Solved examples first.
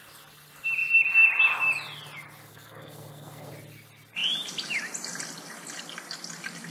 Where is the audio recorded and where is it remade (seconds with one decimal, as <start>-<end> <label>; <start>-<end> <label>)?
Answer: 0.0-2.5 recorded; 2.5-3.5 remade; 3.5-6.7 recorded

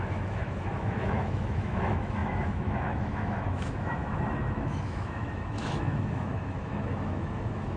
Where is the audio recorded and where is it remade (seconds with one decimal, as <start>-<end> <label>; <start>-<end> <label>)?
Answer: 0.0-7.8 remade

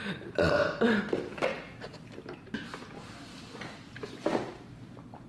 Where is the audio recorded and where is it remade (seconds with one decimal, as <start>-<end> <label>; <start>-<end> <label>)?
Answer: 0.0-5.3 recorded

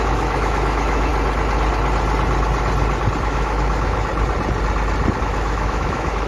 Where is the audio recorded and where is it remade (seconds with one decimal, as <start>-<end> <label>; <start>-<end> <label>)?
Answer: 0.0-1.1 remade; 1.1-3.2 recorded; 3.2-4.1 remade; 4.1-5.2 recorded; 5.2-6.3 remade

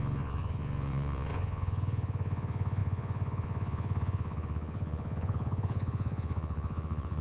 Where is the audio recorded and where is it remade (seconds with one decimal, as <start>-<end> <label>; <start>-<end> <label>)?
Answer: 0.0-7.2 remade

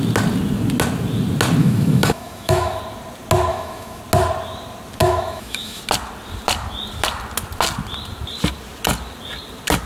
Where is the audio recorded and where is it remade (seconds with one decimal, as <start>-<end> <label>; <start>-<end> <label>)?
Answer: 0.0-1.6 recorded; 1.6-2.8 remade; 2.8-3.5 recorded; 3.5-4.0 remade; 4.0-5.0 recorded; 5.0-5.8 remade; 5.8-9.9 recorded

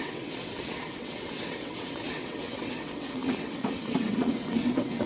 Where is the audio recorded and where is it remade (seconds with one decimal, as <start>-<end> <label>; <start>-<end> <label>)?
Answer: 0.0-5.1 remade